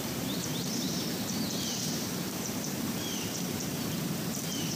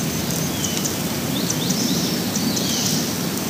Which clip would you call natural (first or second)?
second